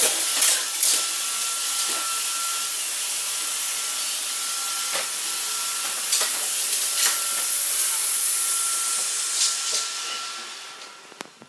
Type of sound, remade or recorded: recorded